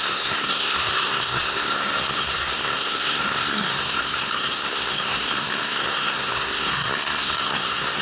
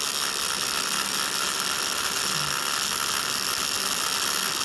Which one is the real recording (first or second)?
second